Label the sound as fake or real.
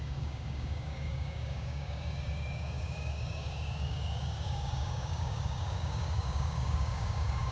fake